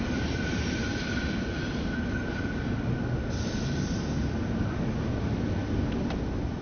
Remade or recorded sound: recorded